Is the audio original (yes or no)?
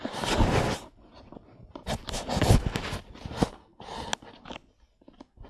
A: yes